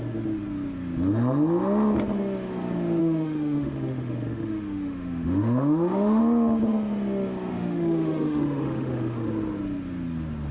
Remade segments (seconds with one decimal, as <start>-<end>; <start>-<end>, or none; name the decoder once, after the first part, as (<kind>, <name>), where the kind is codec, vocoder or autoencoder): 3.0-6.2 (autoencoder, DAC-VAE); 7.5-9.3